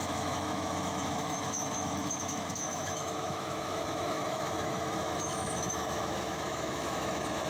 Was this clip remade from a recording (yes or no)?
yes